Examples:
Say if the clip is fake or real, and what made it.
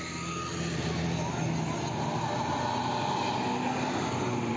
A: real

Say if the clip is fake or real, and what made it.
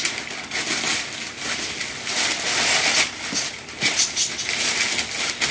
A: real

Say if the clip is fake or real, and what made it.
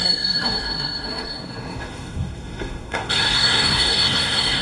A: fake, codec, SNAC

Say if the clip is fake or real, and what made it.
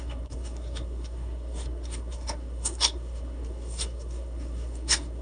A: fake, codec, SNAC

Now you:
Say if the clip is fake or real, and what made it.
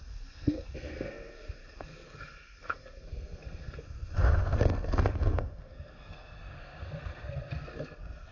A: fake, codec, SNAC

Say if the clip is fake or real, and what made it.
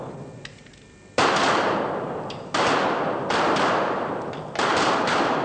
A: real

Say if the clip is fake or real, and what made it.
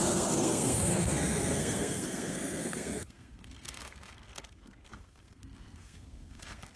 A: fake, codec, SNAC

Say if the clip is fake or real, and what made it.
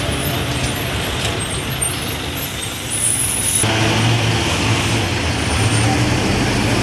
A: real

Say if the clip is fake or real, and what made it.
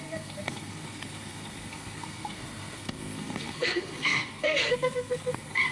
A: fake, codec, SNAC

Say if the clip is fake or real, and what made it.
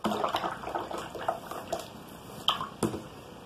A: real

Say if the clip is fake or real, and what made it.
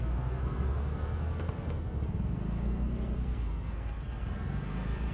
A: fake, codec, SNAC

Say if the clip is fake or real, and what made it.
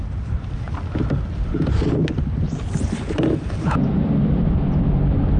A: real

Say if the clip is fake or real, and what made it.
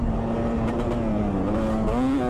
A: real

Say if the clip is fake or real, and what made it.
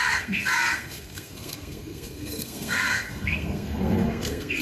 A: fake, codec, SNAC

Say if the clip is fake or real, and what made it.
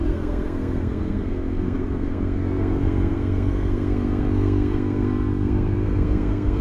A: fake, codec, SNAC